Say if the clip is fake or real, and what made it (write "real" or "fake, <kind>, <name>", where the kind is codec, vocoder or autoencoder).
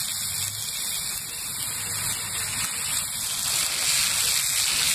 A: real